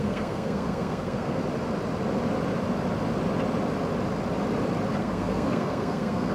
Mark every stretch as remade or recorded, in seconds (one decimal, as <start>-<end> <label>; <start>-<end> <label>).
0.0-1.4 remade; 1.4-5.0 recorded; 5.0-6.3 remade